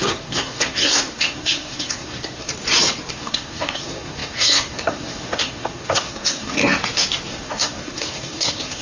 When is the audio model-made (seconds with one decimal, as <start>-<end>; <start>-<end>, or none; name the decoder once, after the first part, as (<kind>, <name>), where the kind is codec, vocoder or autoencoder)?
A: 0.0-2.5 (codec, SNAC); 3.1-6.6; 7.3-8.8